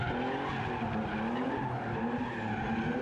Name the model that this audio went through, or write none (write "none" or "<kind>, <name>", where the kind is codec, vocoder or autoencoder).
none